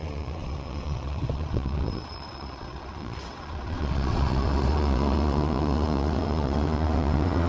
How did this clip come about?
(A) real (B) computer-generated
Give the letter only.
B